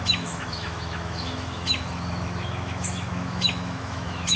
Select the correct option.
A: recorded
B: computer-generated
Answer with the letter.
B